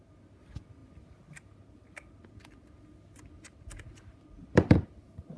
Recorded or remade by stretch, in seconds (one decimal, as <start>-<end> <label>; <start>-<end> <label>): 0.0-5.4 recorded